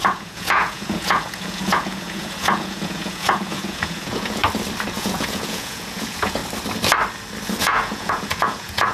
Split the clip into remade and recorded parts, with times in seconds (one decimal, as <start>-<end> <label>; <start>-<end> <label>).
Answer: 0.0-4.4 remade; 4.4-4.9 recorded; 4.9-6.4 remade; 6.4-7.6 recorded; 7.6-8.9 remade